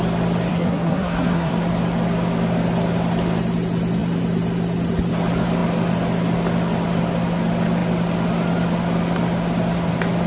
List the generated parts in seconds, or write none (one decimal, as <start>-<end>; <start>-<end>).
0.5-1.5